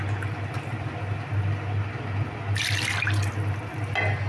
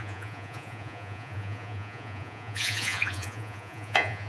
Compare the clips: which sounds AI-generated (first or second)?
second